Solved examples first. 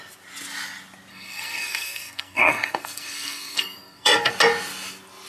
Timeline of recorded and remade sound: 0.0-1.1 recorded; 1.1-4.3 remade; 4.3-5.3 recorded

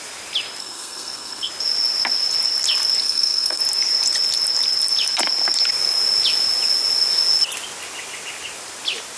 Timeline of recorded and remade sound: 0.0-0.6 recorded; 0.6-1.5 remade; 1.5-3.0 recorded; 3.0-3.6 remade; 3.6-9.2 recorded